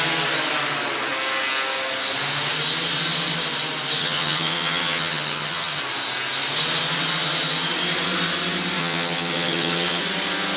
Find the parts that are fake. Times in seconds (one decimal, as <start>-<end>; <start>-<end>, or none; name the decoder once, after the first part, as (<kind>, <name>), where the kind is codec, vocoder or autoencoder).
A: 4.0-5.8 (vocoder, HiFi-GAN); 8.8-10.0